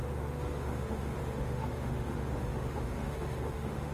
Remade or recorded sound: remade